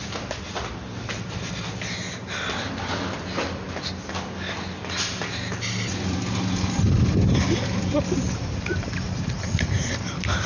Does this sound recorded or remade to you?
recorded